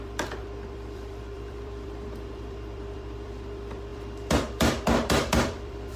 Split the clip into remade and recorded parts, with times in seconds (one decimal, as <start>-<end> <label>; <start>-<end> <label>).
0.0-6.0 remade